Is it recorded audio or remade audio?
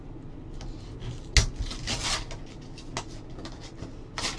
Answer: recorded